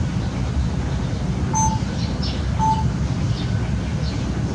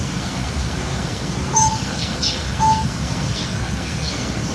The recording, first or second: first